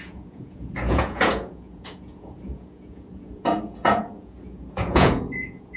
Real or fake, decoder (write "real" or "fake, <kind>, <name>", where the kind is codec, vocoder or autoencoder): fake, vocoder, Vocos